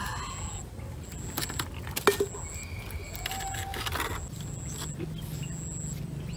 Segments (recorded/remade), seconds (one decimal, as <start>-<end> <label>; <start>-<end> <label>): 0.0-6.4 recorded